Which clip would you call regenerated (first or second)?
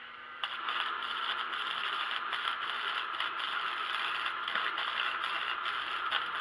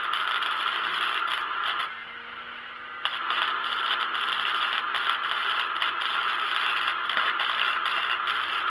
first